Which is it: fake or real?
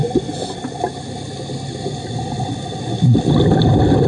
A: real